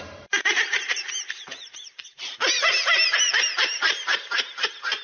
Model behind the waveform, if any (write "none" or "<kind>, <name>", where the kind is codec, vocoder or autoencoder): vocoder, BigVGAN v2